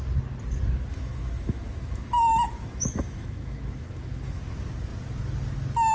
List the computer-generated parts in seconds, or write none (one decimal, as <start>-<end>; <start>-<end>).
0.9-4.4

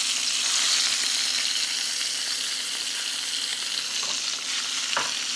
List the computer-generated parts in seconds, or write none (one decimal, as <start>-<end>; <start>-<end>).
none

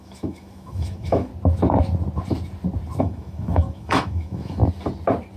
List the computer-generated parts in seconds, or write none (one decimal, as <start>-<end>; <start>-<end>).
0.0-1.3; 3.0-4.6

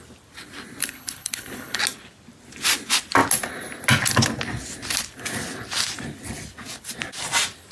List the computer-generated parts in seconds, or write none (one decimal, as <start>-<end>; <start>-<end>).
0.8-1.8